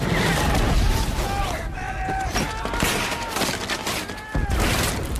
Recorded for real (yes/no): yes